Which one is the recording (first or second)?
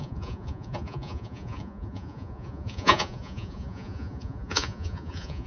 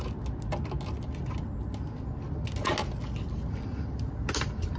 second